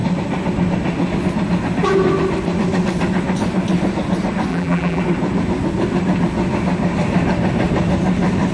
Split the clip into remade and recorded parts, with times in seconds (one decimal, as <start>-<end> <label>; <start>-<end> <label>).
0.0-4.5 recorded; 4.5-5.0 remade; 5.0-8.5 recorded